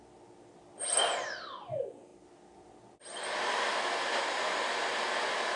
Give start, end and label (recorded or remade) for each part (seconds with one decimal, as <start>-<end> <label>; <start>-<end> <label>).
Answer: 0.0-5.6 recorded